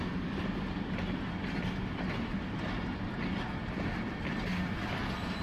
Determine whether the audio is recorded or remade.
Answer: recorded